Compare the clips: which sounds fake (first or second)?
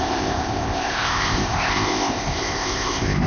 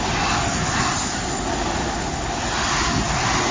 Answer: first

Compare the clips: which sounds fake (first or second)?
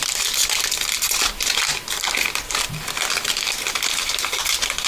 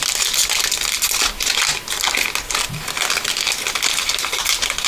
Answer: first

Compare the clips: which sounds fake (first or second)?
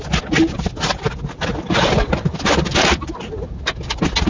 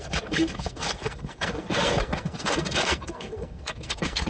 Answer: second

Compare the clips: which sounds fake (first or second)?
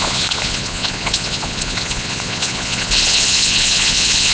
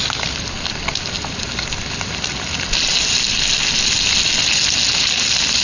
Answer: first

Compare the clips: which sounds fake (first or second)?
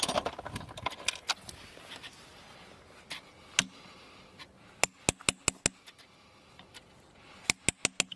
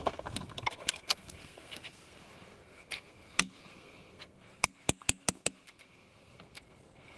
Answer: second